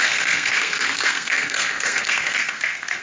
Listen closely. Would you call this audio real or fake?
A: fake